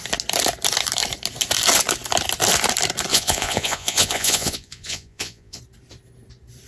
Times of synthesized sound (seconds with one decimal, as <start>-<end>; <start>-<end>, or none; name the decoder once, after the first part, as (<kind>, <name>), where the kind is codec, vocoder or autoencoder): 3.1-5.6 (vocoder, Vocos)